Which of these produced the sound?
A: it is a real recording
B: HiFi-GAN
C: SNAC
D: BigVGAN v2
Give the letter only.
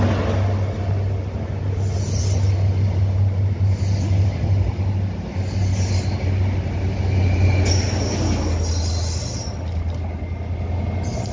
A